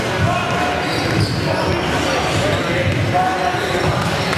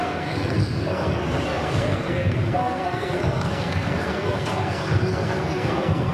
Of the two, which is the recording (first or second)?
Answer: first